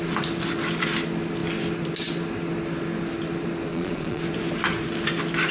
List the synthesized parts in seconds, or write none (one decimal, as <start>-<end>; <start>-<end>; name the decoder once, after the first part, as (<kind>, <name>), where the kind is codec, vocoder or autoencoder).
3.7-4.2 (vocoder, Vocos)